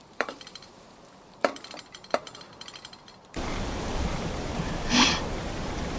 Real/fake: fake